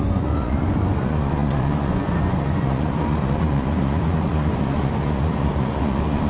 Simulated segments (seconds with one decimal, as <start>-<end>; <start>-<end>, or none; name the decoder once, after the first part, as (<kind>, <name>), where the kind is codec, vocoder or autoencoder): 0.0-6.3 (vocoder, Vocos)